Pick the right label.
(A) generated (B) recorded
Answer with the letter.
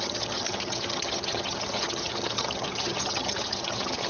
A